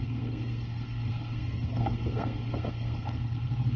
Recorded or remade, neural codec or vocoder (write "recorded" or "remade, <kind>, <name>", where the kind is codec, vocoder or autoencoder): remade, codec, SNAC